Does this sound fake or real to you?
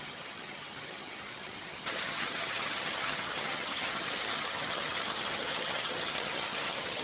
fake